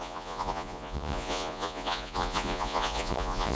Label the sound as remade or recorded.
remade